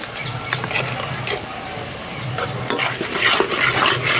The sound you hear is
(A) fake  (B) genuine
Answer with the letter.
B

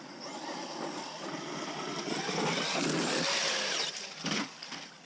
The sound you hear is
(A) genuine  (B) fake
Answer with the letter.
A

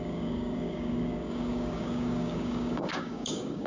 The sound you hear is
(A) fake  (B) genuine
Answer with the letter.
A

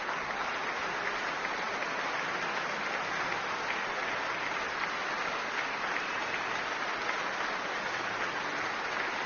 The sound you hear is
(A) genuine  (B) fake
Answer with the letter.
A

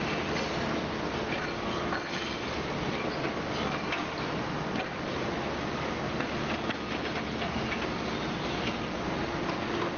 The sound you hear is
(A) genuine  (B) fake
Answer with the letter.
A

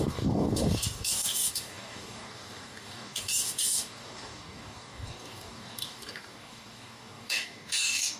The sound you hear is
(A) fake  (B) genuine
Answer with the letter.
A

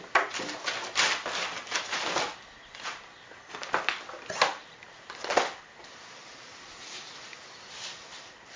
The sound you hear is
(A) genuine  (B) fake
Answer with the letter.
A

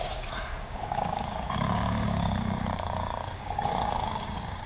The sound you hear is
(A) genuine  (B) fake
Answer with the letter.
B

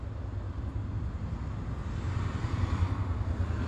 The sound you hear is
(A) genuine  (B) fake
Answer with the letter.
A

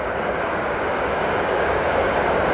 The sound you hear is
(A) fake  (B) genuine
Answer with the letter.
A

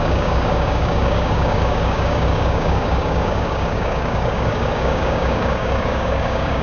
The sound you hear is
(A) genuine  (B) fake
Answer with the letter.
B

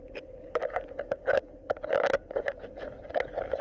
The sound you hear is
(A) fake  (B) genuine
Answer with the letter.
A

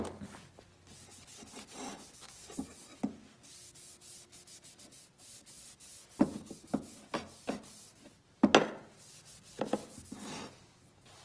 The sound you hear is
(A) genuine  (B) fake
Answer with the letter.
A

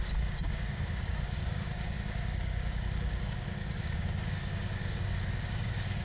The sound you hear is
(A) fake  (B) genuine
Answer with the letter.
A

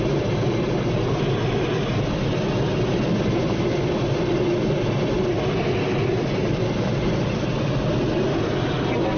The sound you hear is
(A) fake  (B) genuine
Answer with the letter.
B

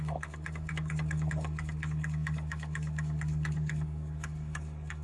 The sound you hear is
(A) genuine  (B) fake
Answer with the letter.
B